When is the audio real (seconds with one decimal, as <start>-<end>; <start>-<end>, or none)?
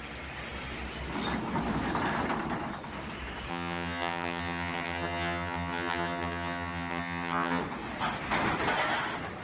0.0-3.5; 7.6-9.4